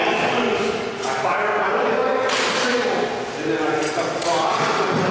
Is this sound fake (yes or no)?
no